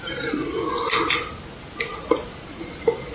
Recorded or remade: recorded